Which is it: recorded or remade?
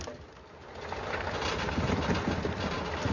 recorded